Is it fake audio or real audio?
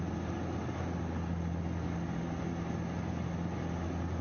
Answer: real